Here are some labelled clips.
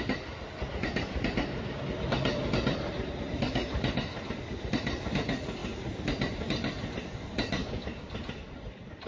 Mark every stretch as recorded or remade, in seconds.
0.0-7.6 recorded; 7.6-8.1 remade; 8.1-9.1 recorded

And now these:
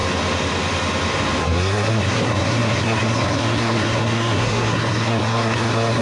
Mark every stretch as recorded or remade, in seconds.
0.0-1.4 recorded; 1.4-6.0 remade

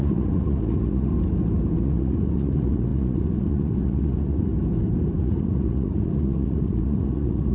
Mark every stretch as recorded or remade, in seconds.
0.0-1.1 remade; 1.1-1.8 recorded; 1.8-4.5 remade; 4.5-5.2 recorded; 5.2-7.5 remade